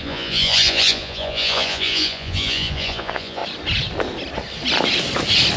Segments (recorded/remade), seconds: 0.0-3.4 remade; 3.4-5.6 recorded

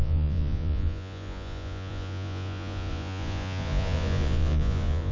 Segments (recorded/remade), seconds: 0.0-5.1 remade

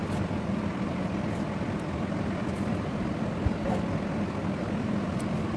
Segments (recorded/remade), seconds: 0.0-4.4 recorded; 4.4-5.6 remade

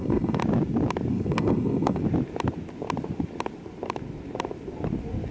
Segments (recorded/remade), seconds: 0.0-0.4 remade; 0.4-1.1 recorded; 1.1-2.0 remade; 2.0-5.3 recorded

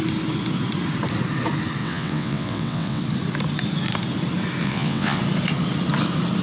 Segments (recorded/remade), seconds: 0.0-1.8 recorded; 1.8-3.0 remade; 3.0-4.6 recorded; 4.6-5.2 remade; 5.2-6.4 recorded

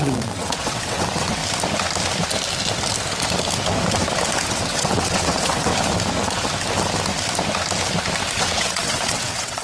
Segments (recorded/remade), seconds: 0.0-1.4 remade; 1.4-4.5 recorded; 4.5-5.7 remade; 5.7-8.4 recorded; 8.4-9.6 remade

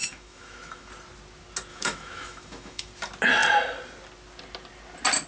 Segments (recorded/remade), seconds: 0.0-0.9 remade; 0.9-1.7 recorded; 1.7-2.9 remade; 2.9-5.3 recorded

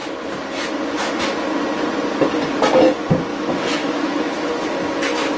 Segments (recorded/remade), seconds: 0.0-3.3 recorded; 3.3-4.5 remade; 4.5-5.4 recorded